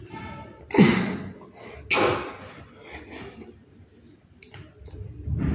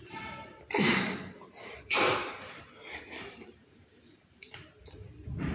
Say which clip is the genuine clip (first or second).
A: first